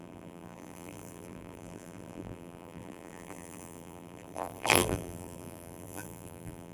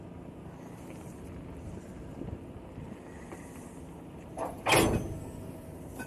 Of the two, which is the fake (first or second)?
first